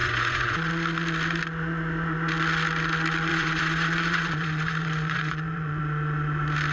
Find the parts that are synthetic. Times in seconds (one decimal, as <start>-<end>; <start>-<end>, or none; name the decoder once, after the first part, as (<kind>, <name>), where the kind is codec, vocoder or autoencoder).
0.0-0.7 (vocoder, Vocos); 3.3-5.8